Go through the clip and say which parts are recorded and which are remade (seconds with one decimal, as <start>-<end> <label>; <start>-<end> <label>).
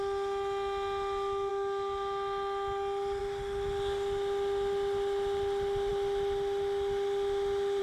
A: 0.0-7.8 recorded